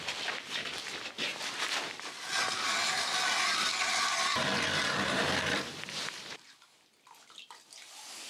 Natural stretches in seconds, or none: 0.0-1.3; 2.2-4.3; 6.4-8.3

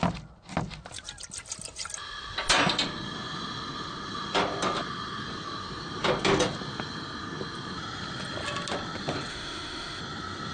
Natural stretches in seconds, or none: 0.0-9.3; 10.0-10.5